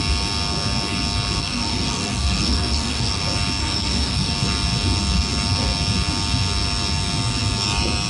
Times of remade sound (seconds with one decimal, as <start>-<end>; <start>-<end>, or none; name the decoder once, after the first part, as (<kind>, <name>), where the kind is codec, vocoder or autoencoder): 1.4-3.2 (codec, SNAC); 3.6-4.3